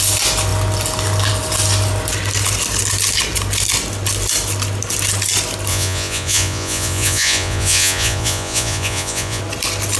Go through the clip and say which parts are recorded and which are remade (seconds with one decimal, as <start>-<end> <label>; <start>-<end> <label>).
0.0-5.7 recorded; 5.7-9.4 remade; 9.4-10.0 recorded